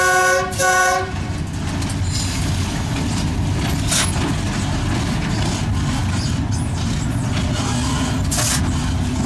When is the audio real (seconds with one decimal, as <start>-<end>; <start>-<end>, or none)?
0.0-9.3